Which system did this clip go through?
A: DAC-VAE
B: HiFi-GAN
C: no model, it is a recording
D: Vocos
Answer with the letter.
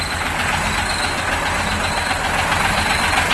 C